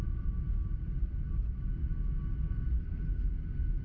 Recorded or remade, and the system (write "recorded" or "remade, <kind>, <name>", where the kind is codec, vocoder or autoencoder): recorded